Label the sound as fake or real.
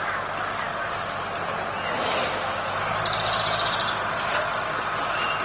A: real